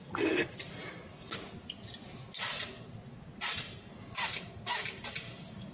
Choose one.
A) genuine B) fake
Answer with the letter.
A